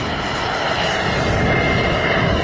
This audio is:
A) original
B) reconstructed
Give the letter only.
A